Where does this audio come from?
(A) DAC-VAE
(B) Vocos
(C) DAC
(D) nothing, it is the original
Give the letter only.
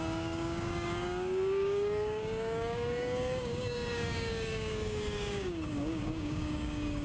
C